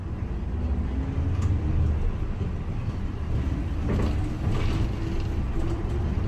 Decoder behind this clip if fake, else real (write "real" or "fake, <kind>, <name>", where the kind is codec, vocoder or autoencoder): real